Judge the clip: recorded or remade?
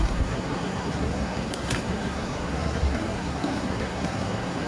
remade